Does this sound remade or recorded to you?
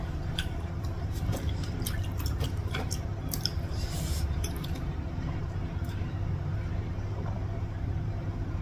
remade